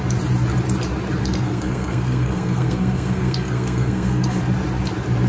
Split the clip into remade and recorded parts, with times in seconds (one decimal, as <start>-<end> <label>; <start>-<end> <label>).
0.0-1.2 recorded; 1.2-4.4 remade; 4.4-5.3 recorded